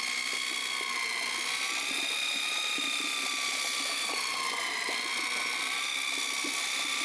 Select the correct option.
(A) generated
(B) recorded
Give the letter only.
B